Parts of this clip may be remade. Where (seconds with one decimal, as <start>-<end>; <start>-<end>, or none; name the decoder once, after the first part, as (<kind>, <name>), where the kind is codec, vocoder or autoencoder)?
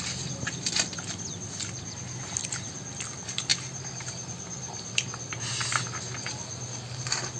none